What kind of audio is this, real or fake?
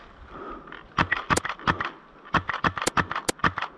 real